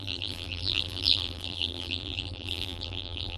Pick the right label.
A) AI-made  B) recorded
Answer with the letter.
A